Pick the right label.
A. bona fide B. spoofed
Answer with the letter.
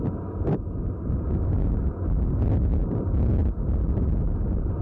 A